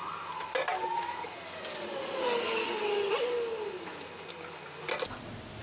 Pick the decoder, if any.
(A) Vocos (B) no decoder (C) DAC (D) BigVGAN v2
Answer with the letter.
B